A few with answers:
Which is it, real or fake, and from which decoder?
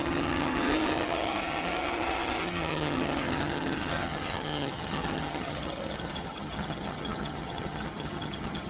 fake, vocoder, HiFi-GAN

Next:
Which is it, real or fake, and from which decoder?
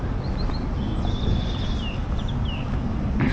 real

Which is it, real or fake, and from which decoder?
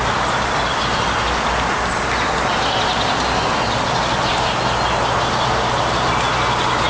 real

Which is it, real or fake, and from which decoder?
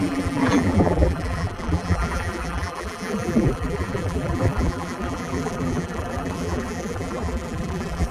fake, vocoder, BigVGAN v2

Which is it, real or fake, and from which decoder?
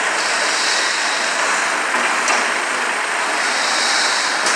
real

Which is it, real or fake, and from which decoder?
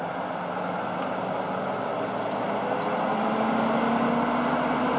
real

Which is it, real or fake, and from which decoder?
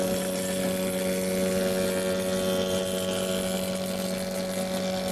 real